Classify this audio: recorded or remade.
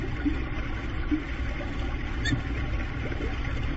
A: recorded